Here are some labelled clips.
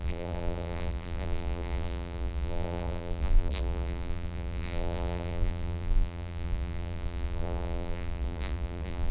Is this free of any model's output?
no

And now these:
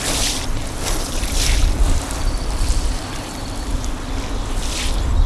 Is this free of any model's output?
no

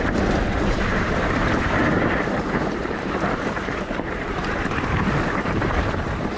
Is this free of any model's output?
no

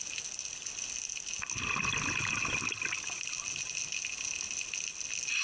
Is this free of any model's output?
yes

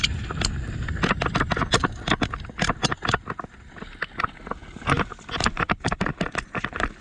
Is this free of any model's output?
yes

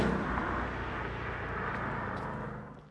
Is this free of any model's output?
yes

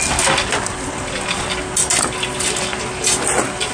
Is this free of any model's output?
yes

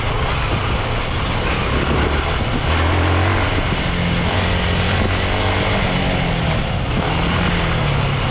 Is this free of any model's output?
yes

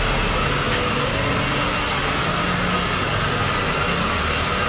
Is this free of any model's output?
yes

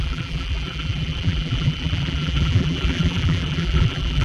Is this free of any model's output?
no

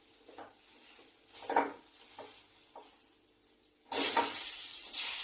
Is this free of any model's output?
yes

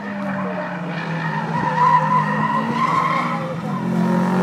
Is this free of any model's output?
yes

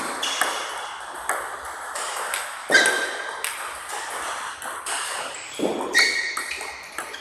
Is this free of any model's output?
yes